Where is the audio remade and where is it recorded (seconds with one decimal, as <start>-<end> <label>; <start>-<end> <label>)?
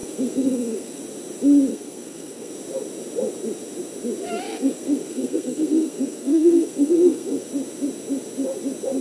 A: 0.0-1.0 remade; 1.0-1.7 recorded; 1.7-2.5 remade; 2.5-4.5 recorded; 4.5-7.5 remade; 7.5-9.0 recorded